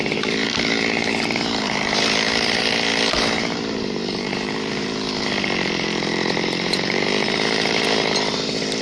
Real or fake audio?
fake